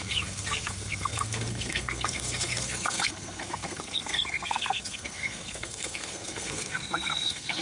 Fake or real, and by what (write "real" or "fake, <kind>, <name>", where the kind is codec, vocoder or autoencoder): fake, codec, SNAC